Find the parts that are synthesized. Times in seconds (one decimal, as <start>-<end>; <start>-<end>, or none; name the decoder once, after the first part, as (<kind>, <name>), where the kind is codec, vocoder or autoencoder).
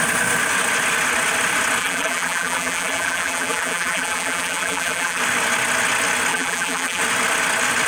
1.8-5.2 (vocoder, BigVGAN v2); 6.3-7.0